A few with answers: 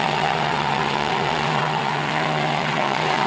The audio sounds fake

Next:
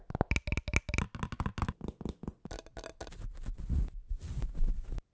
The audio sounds real